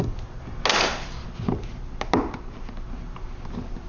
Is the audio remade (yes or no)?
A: no